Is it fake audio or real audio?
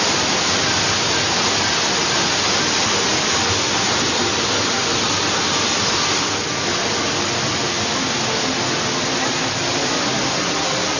real